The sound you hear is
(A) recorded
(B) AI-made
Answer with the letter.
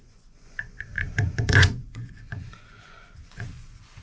B